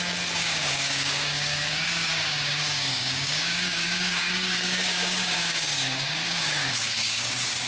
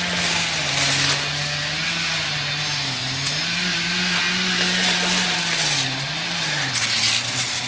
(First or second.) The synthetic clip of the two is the first